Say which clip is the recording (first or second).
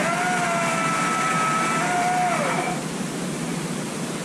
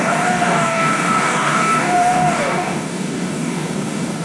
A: first